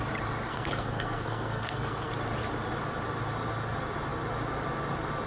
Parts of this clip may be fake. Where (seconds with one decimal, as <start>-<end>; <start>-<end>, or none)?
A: 0.5-2.1